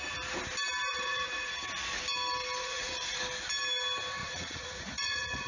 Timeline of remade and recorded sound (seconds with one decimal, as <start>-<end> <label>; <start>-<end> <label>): 0.0-0.9 recorded; 0.9-1.5 remade; 1.5-2.6 recorded; 2.6-3.2 remade; 3.2-4.2 recorded; 4.2-5.5 remade